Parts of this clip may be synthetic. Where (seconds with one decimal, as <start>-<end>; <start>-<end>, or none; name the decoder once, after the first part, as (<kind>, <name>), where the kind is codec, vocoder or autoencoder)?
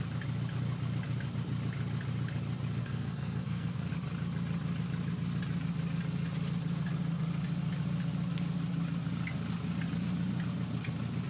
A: 2.8-3.9 (codec, SNAC)